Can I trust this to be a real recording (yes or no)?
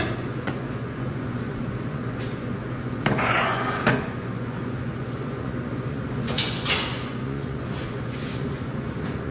no